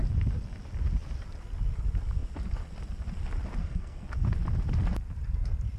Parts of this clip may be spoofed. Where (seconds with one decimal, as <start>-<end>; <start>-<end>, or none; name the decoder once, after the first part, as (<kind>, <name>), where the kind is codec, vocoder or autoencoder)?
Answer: 3.6-4.1 (codec, SNAC)